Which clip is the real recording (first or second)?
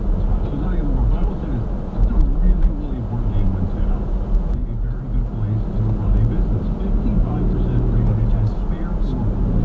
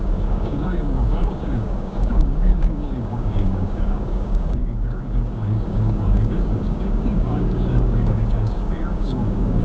first